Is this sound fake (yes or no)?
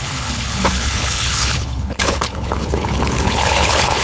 yes